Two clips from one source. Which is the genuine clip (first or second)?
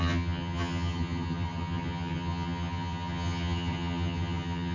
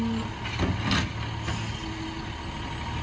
second